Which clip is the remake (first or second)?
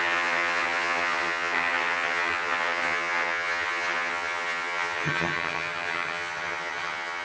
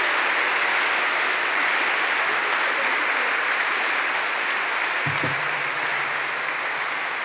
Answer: first